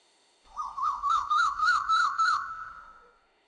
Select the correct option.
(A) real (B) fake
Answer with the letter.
B